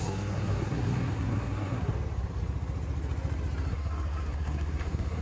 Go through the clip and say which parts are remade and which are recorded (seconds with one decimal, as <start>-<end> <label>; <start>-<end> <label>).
0.0-1.9 remade; 1.9-3.7 recorded; 3.7-5.2 remade